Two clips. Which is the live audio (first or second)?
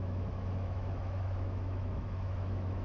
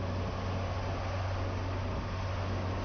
second